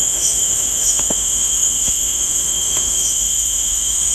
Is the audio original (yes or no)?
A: no